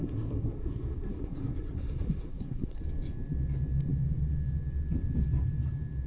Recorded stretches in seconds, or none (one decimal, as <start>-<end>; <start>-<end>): 2.8-6.1